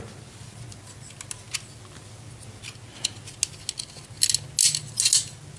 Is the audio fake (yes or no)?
no